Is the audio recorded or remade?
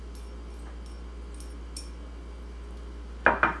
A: recorded